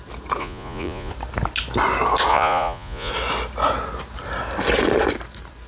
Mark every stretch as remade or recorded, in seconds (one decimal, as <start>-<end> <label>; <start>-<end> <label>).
0.0-0.4 recorded; 0.4-1.1 remade; 1.1-2.3 recorded; 2.3-3.1 remade; 3.1-5.7 recorded